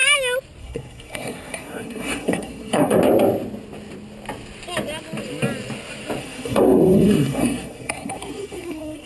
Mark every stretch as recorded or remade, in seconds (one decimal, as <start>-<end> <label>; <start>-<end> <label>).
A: 0.0-0.6 recorded; 0.6-3.0 remade; 3.0-6.2 recorded; 6.2-9.1 remade